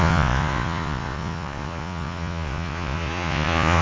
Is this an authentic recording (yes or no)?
no